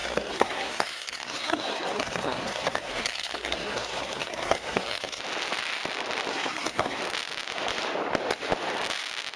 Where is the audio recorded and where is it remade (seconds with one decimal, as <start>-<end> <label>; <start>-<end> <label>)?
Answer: 0.0-5.2 remade; 5.2-6.3 recorded; 6.3-7.0 remade; 7.0-9.4 recorded